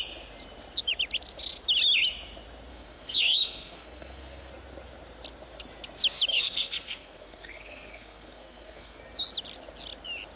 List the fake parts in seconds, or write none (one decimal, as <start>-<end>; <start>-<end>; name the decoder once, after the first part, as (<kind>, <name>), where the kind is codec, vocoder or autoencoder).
2.7-4.5 (codec, SNAC); 6.3-9.0